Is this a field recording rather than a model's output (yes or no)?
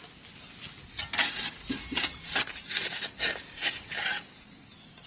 yes